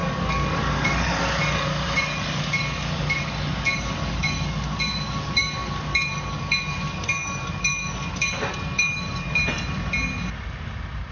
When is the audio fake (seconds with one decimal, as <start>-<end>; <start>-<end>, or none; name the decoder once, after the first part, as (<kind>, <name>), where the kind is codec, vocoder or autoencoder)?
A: 0.0-9.4 (codec, DAC)